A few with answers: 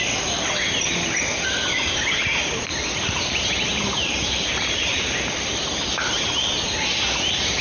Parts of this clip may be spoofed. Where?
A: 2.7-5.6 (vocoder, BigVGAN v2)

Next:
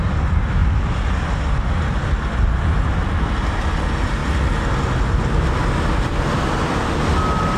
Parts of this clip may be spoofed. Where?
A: none

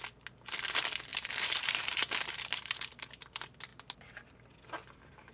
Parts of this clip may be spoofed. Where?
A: 1.1-3.1 (vocoder, BigVGAN v2)

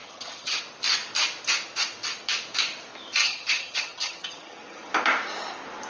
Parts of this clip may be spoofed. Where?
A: 0.0-0.6 (vocoder, HiFi-GAN); 3.2-4.9

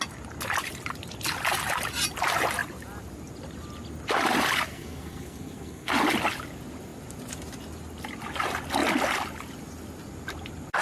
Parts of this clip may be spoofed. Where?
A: 4.7-5.9 (codec, SNAC)

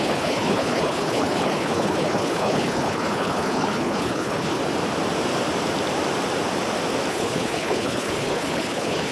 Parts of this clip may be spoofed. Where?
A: 0.0-4.6 (codec, HILCodec); 7.1-9.1